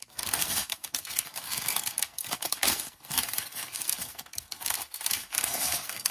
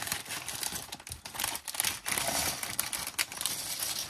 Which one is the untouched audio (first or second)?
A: second